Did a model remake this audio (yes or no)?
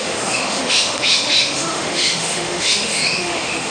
yes